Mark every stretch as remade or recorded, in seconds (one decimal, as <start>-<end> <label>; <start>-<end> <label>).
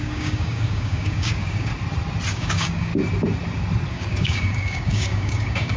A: 0.0-1.7 remade; 1.7-2.3 recorded; 2.3-2.9 remade; 2.9-3.9 recorded; 3.9-5.8 remade